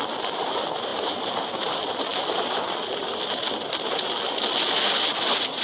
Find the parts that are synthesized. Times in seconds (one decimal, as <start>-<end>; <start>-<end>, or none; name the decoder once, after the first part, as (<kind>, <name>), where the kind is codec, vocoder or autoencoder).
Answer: none